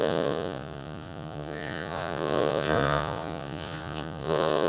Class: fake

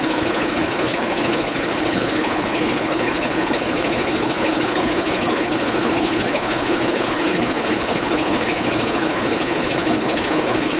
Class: fake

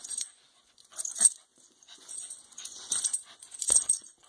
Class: fake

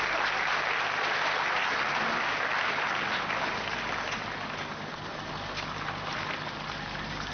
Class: real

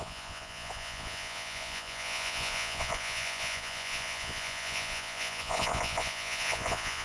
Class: fake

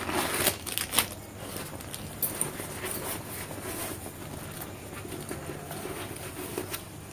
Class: real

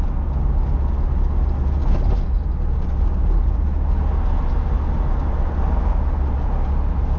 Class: real